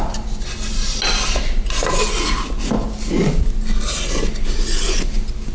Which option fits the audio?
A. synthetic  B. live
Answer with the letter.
B